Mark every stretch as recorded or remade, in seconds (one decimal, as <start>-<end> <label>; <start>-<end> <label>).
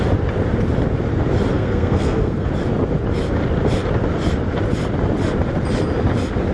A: 0.0-1.5 recorded; 1.5-2.5 remade; 2.5-6.5 recorded